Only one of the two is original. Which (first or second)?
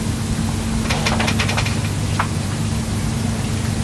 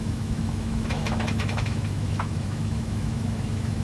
first